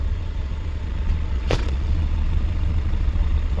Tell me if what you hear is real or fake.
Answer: fake